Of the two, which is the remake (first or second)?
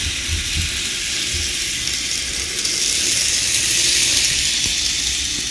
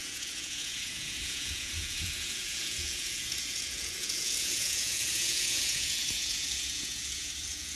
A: second